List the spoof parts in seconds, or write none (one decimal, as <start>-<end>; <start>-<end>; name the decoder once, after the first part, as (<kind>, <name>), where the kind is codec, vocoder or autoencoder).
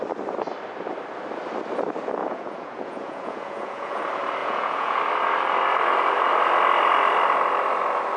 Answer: 2.2-4.0 (vocoder, Vocos); 4.4-5.0